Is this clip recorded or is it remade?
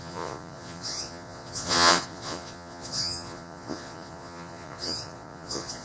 remade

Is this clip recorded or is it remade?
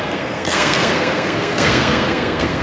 remade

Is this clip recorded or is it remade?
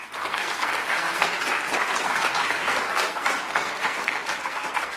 remade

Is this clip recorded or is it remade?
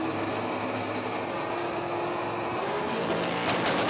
recorded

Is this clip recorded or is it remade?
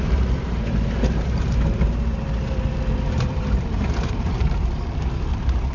remade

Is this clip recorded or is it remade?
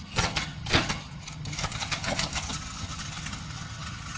remade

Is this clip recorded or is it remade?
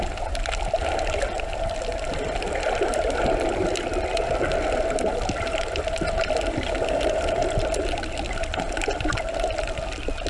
recorded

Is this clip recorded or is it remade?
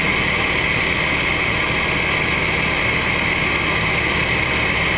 recorded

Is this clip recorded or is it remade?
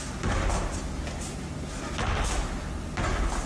recorded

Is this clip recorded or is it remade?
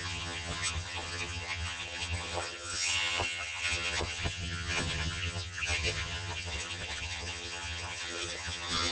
remade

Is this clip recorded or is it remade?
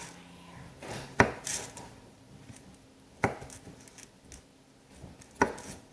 recorded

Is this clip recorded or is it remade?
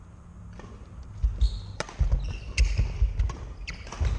recorded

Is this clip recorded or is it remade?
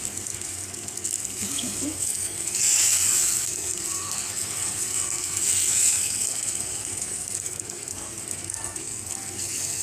remade